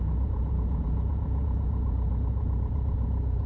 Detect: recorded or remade remade